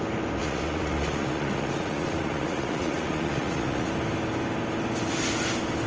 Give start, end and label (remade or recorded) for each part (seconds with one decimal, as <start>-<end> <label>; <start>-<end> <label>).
0.0-0.4 recorded; 0.4-3.9 remade; 3.9-5.9 recorded